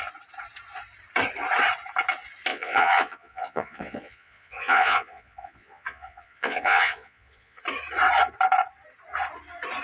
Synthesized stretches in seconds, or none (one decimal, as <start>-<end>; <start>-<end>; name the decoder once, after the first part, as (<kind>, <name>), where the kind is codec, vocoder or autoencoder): 2.5-7.6 (vocoder, Vocos)